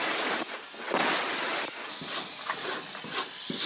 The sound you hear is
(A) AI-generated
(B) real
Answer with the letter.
B